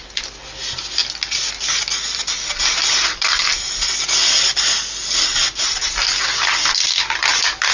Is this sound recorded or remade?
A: recorded